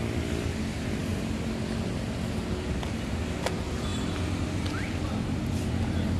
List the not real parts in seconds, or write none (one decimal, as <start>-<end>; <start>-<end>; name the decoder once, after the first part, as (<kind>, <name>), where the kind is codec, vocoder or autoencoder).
none